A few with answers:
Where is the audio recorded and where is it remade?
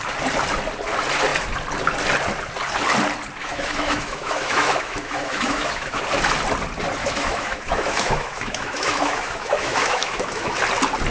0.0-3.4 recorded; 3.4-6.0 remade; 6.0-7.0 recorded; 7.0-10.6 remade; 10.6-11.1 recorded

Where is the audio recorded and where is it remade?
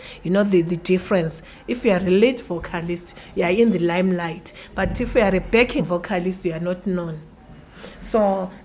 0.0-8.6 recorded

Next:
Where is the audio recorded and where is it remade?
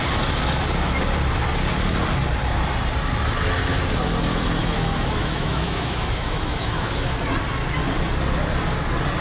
0.0-4.6 recorded; 4.6-7.1 remade; 7.1-9.2 recorded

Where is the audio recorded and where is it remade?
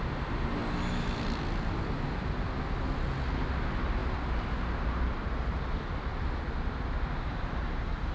0.0-8.1 recorded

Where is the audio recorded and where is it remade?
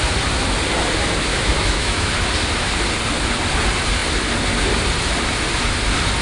0.0-1.3 recorded; 1.3-2.1 remade; 2.1-6.2 recorded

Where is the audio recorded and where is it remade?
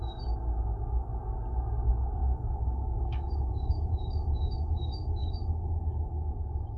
0.0-2.2 recorded; 2.2-6.3 remade; 6.3-6.8 recorded